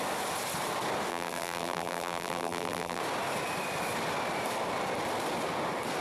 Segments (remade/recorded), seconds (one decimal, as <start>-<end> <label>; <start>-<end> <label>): 0.0-1.1 recorded; 1.1-3.0 remade; 3.0-6.0 recorded